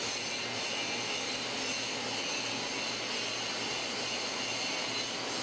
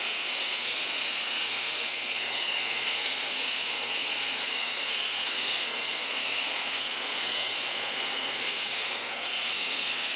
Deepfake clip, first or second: second